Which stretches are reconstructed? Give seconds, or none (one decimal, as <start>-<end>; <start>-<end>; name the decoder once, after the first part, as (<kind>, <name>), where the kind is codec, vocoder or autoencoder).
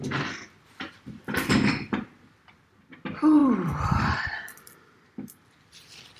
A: 0.0-6.2 (vocoder, BigVGAN v2)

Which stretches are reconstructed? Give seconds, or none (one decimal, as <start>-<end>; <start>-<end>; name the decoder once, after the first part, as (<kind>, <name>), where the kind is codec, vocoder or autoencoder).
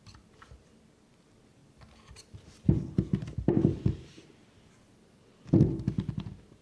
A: 0.0-6.6 (vocoder, BigVGAN v2)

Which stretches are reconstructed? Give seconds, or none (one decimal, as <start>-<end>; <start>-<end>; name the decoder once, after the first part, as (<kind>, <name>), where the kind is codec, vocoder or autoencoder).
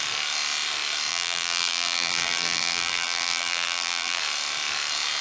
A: 1.1-4.2 (vocoder, BigVGAN v2)